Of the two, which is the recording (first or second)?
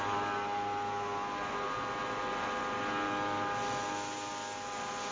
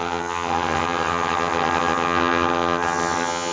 first